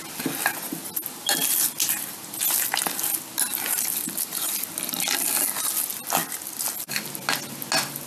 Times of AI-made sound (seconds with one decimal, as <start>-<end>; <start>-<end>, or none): none